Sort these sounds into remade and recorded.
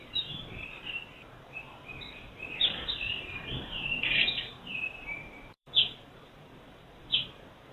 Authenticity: remade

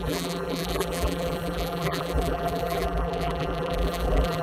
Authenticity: remade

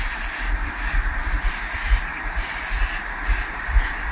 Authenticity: recorded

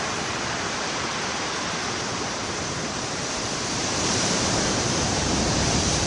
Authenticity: remade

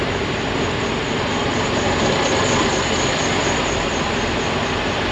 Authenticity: remade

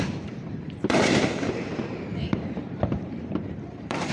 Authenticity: remade